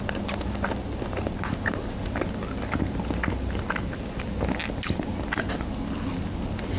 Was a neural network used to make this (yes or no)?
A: no